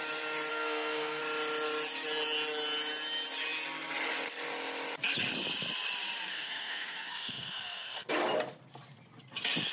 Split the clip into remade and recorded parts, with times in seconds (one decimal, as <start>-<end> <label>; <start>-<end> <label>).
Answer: 0.0-0.5 recorded; 0.5-1.2 remade; 1.2-6.3 recorded; 6.3-8.1 remade; 8.1-9.7 recorded